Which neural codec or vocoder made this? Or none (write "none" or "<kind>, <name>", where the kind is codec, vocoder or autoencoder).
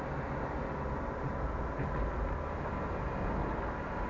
none